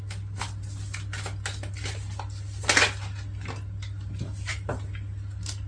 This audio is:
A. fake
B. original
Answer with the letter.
B